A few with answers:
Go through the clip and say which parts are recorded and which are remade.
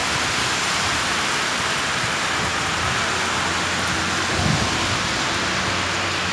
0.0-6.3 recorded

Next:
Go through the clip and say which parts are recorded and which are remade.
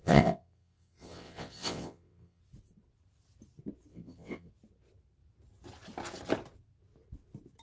0.0-2.4 remade; 2.4-3.9 recorded; 3.9-4.5 remade; 4.5-7.6 recorded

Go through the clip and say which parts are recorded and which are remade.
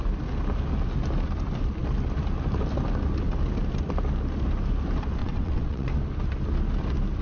0.0-5.2 recorded; 5.2-5.9 remade; 5.9-7.2 recorded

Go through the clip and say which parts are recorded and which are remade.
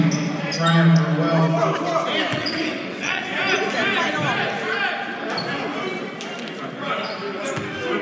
0.0-2.3 recorded; 2.3-3.2 remade; 3.2-8.0 recorded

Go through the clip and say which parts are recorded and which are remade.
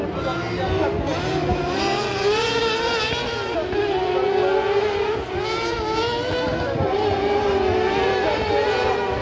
0.0-9.2 recorded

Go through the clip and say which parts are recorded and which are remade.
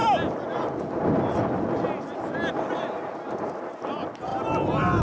0.0-5.0 recorded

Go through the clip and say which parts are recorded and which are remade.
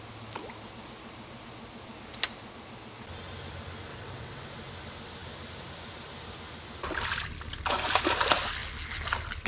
0.0-3.9 recorded; 3.9-4.4 remade; 4.4-9.5 recorded